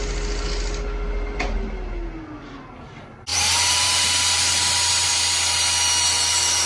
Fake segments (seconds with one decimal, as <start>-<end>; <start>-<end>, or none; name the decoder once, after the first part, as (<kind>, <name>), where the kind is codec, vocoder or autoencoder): 3.3-5.1 (vocoder, BigVGAN v2)